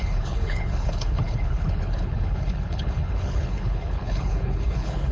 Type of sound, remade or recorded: remade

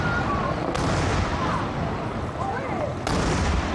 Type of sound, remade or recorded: recorded